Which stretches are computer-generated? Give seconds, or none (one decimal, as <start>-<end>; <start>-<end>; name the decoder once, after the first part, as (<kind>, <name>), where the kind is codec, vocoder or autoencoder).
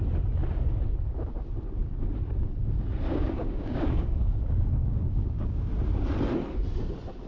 3.1-5.7 (codec, DAC)